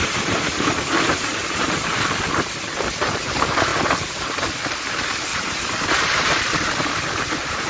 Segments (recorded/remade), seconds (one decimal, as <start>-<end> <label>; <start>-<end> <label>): 0.0-1.9 remade; 1.9-2.6 recorded; 2.6-7.7 remade